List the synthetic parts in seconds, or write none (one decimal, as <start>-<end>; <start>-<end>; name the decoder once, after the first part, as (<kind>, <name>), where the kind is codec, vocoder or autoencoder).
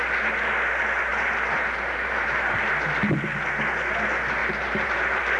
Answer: 1.1-2.7 (vocoder, BigVGAN v2); 4.4-5.4